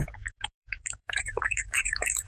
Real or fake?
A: fake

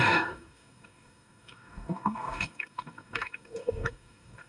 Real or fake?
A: fake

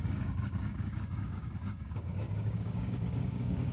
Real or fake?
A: fake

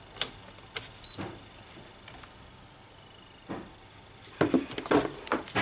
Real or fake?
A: real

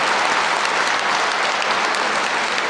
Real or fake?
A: real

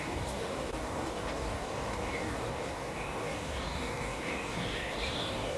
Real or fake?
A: fake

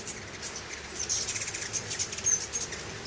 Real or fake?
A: real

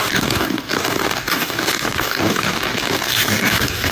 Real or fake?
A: fake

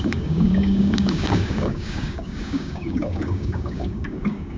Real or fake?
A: fake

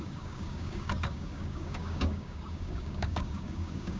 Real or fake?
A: fake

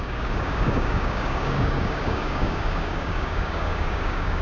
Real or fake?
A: fake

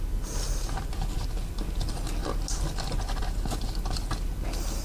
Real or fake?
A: real